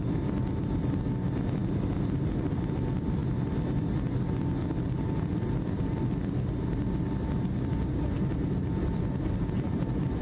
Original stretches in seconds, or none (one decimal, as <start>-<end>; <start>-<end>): 0.0-10.2